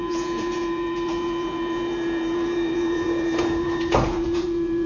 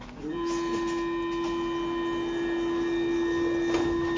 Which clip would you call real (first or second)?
second